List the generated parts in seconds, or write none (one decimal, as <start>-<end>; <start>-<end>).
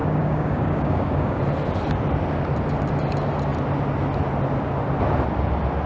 0.0-1.4